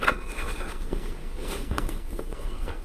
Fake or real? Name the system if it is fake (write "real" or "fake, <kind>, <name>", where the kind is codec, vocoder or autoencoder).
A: fake, codec, SNAC